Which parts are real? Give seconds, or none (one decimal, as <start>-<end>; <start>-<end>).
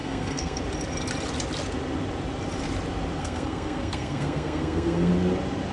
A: 0.6-3.2; 5.1-5.7